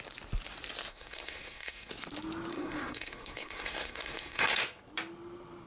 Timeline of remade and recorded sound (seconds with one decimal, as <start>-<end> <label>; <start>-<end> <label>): 0.0-0.9 recorded; 0.9-1.9 remade; 1.9-2.5 recorded; 2.5-4.6 remade; 4.6-5.7 recorded

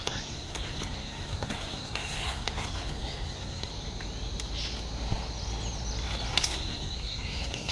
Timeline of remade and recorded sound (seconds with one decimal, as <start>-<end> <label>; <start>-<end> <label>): 0.0-3.7 remade; 3.7-6.4 recorded; 6.4-7.7 remade

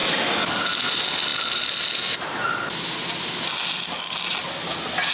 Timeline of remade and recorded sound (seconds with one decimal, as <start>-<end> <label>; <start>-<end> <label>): 0.0-5.1 recorded